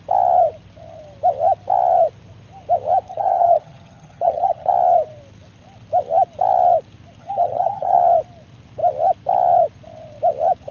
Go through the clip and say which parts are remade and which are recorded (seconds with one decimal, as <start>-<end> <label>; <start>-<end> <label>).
0.0-3.1 recorded; 3.1-4.7 remade; 4.7-7.2 recorded; 7.2-8.0 remade; 8.0-10.7 recorded